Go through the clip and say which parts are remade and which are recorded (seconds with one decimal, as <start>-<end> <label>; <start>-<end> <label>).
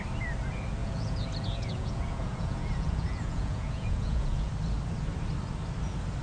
0.0-0.8 recorded; 0.8-4.5 remade; 4.5-6.2 recorded